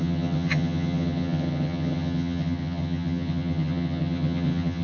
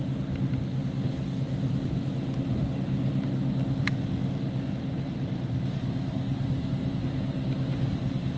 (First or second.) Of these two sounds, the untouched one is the second